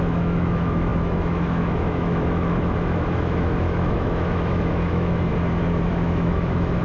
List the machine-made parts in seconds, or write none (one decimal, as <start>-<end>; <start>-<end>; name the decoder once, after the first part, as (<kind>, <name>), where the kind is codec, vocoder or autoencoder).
0.0-5.3 (autoencoder, DAC-VAE); 5.9-6.8